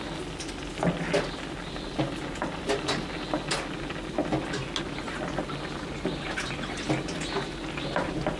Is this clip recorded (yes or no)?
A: yes